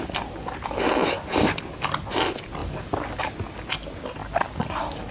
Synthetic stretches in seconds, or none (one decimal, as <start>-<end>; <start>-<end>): none